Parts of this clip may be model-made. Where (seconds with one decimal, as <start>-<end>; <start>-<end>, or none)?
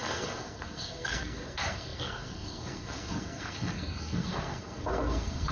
0.0-5.5